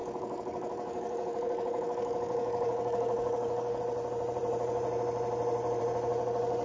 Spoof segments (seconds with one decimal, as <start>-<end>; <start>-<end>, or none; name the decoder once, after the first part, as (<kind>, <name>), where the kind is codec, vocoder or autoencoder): 0.0-3.8 (codec, DAC)